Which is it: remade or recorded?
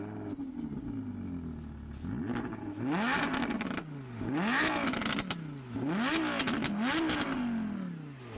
recorded